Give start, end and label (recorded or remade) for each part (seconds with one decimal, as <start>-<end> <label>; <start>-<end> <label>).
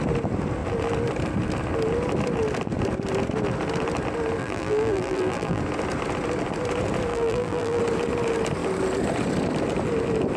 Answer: 0.0-4.4 recorded; 4.4-5.6 remade; 5.6-7.1 recorded; 7.1-7.8 remade; 7.8-10.4 recorded